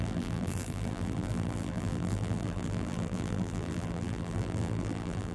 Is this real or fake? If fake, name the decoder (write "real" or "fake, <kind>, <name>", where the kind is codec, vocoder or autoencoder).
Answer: fake, vocoder, BigVGAN v2